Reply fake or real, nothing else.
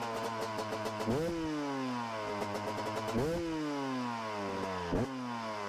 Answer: real